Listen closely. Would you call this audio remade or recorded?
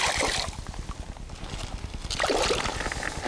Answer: recorded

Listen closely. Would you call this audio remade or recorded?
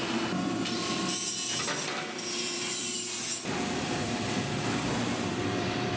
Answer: remade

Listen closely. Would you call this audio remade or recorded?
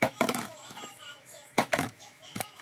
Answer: remade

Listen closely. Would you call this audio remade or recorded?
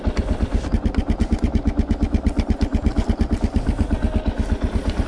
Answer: recorded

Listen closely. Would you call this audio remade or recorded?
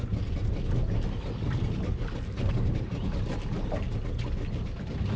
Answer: recorded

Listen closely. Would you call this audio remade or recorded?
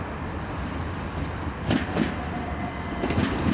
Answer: recorded